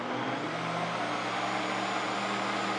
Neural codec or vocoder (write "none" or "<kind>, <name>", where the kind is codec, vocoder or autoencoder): none